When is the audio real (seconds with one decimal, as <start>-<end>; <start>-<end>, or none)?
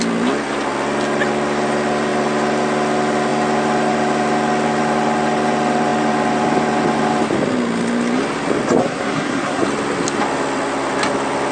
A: 0.0-8.8; 9.6-11.5